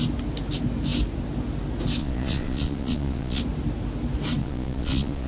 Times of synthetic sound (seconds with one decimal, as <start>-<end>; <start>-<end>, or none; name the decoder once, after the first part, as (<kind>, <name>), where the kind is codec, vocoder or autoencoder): 2.0-3.4 (vocoder, Vocos); 4.4-5.3